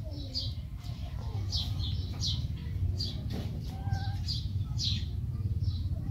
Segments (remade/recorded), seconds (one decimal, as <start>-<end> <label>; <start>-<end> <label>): 0.0-1.0 remade; 1.0-2.2 recorded; 2.2-2.6 remade; 2.6-3.4 recorded; 3.4-6.1 remade